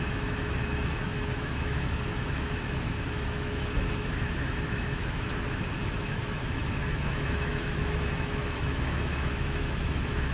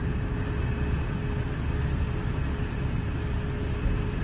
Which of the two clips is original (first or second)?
second